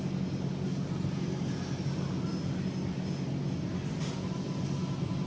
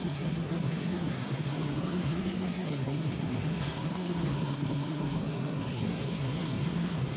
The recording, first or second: first